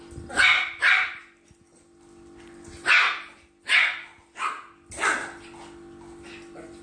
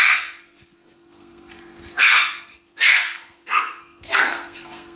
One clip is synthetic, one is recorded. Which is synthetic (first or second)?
second